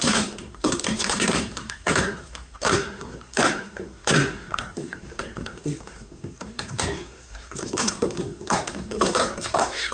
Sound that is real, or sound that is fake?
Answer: fake